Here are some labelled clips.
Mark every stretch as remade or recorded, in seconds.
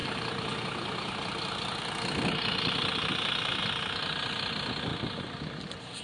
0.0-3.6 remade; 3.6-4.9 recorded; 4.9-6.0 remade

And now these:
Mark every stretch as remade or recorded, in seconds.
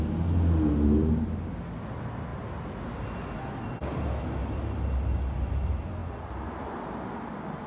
0.0-7.7 recorded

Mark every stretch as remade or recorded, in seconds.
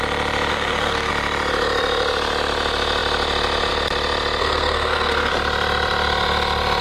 0.0-0.5 recorded; 0.5-1.1 remade; 1.1-4.4 recorded; 4.4-5.3 remade; 5.3-6.8 recorded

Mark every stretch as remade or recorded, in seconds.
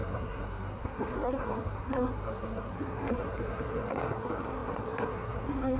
0.0-5.8 remade